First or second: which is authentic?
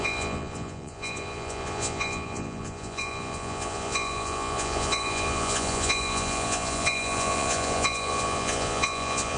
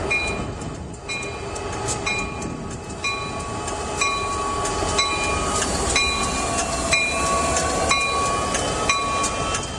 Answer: second